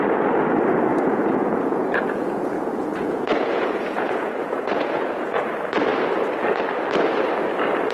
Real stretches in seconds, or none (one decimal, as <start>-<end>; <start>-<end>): 0.0-0.9; 5.5-7.9